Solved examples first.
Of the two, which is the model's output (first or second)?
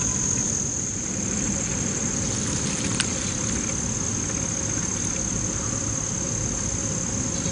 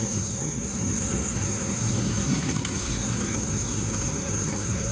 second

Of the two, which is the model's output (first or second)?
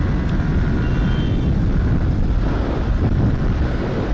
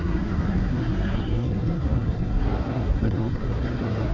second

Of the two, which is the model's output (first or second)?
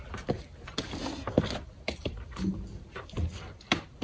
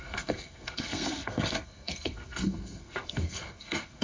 second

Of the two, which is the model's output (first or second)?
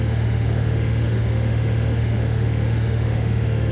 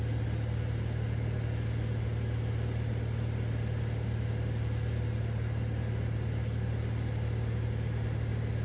first